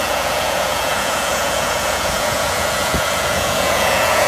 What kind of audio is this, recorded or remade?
remade